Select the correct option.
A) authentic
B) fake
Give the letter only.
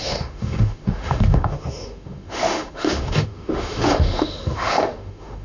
B